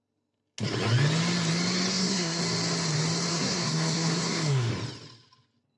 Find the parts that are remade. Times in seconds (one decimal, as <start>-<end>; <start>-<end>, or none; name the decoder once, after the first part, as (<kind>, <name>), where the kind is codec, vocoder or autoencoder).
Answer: 1.9-2.4 (codec, SNAC); 3.3-4.7